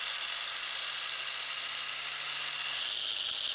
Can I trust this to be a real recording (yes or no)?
yes